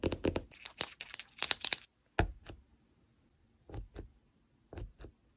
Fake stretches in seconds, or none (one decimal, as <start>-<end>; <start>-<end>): none